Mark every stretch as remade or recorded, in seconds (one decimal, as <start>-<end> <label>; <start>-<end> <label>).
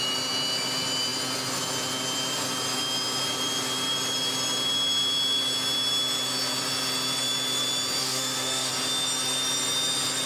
0.0-8.0 recorded; 8.0-8.7 remade; 8.7-10.3 recorded